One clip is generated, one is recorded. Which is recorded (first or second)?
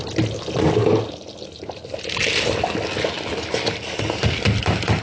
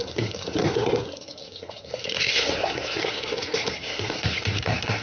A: first